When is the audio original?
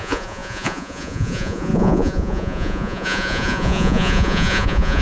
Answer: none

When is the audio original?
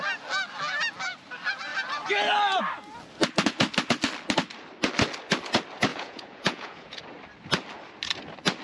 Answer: 0.0-5.9; 7.0-8.6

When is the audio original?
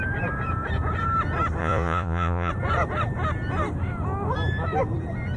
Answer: 0.0-1.6; 2.5-5.4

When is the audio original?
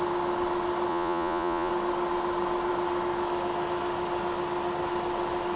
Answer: 0.0-0.9; 1.7-5.6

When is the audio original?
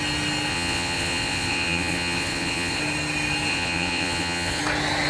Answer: 0.0-0.5; 2.8-3.5; 4.6-5.1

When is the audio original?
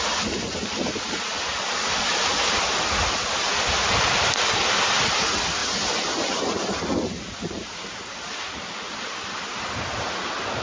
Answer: 0.0-10.6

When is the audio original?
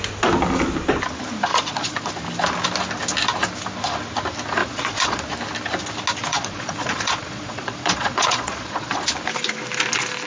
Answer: 0.0-1.5; 2.1-4.6; 5.2-6.3; 9.0-10.3